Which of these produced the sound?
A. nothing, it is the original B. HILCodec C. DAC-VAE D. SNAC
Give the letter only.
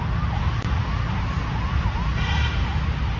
A